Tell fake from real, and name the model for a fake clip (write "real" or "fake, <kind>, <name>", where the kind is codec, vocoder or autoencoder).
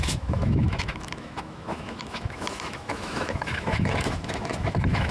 fake, autoencoder, DAC-VAE